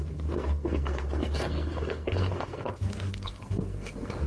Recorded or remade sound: remade